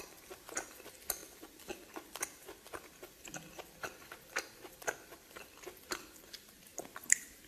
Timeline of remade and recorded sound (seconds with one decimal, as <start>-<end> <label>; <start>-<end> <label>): 0.0-7.5 recorded